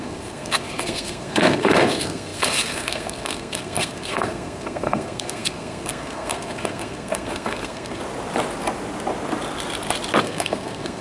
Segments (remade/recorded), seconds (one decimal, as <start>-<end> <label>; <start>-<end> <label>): 0.0-8.0 remade; 8.0-10.2 recorded; 10.2-11.0 remade

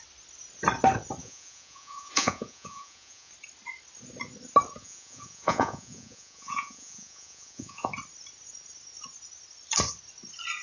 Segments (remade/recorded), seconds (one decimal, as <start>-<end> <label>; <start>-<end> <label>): 0.0-1.2 recorded; 1.2-3.3 remade; 3.3-4.8 recorded; 4.8-7.9 remade; 7.9-10.6 recorded

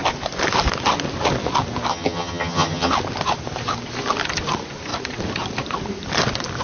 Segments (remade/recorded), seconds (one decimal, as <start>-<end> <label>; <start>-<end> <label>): 0.0-1.9 recorded; 1.9-2.9 remade; 2.9-6.6 recorded

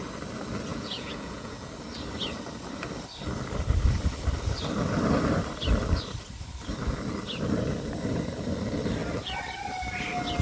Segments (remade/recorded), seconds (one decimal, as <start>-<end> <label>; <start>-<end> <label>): 0.0-0.7 recorded; 0.7-1.7 remade; 1.7-10.4 recorded

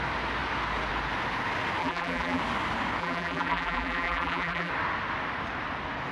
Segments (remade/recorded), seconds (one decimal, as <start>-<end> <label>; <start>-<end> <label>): 0.0-1.8 recorded; 1.8-2.4 remade; 2.4-3.0 recorded; 3.0-4.7 remade; 4.7-6.1 recorded

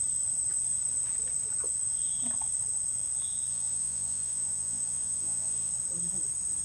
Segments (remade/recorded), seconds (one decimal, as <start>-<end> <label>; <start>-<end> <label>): 0.0-3.5 recorded; 3.5-5.7 remade; 5.7-6.6 recorded